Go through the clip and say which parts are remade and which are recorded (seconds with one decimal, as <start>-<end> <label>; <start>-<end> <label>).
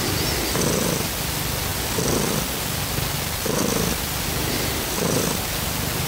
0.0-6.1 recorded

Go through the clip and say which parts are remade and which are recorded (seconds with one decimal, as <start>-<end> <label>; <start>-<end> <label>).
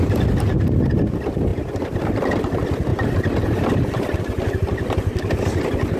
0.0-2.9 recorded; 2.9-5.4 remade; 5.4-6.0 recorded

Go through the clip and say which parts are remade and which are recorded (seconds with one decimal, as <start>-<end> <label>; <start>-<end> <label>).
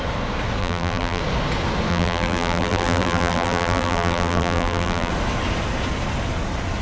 0.0-0.6 recorded; 0.6-1.2 remade; 1.2-1.9 recorded; 1.9-5.1 remade; 5.1-6.8 recorded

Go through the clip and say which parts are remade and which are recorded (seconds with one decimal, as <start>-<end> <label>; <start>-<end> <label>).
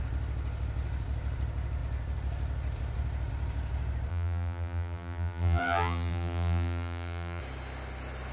0.0-4.1 recorded; 4.1-7.4 remade; 7.4-8.3 recorded